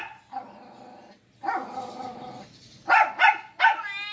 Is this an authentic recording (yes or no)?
yes